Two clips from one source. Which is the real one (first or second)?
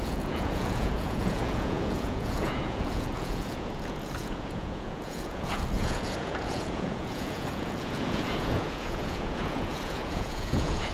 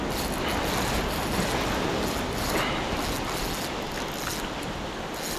second